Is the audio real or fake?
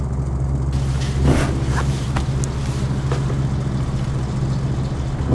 real